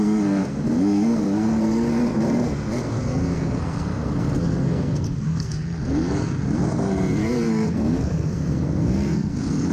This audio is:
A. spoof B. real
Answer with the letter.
A